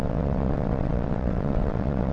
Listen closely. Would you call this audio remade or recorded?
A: remade